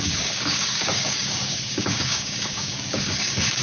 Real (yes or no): no